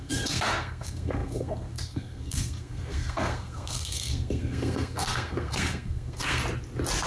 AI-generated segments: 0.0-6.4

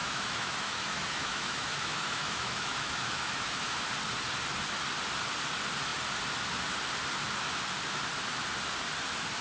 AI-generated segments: 0.0-3.9